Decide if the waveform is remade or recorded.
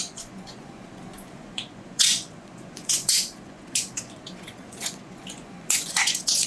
remade